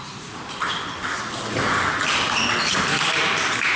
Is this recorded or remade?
remade